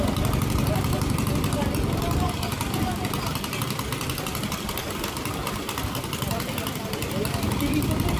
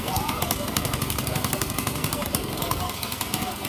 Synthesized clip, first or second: second